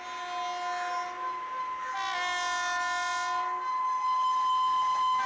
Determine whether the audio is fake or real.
real